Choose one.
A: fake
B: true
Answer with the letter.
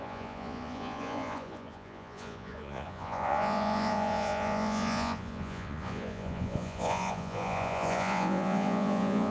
A